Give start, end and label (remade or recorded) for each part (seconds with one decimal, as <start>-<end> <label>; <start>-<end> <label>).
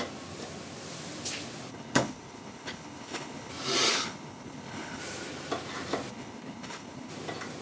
0.0-1.7 recorded; 1.7-3.5 remade; 3.5-3.9 recorded; 3.9-5.0 remade; 5.0-6.1 recorded; 6.1-7.1 remade; 7.1-7.6 recorded